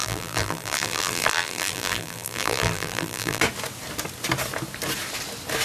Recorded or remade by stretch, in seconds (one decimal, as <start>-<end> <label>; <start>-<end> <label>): 0.0-3.4 remade; 3.4-5.6 recorded